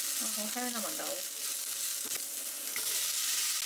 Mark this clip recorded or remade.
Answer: recorded